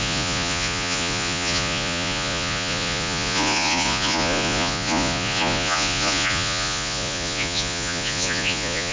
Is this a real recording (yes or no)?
no